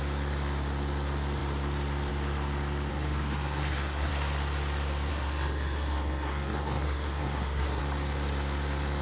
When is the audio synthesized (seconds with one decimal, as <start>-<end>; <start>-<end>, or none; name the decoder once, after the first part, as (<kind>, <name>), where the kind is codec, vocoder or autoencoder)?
2.9-4.1 (codec, SNAC); 5.1-7.8